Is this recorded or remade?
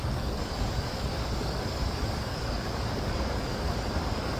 remade